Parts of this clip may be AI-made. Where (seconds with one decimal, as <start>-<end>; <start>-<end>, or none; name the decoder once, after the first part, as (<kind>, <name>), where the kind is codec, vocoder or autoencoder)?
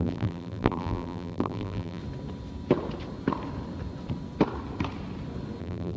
0.0-2.0 (vocoder, BigVGAN v2); 5.6-6.0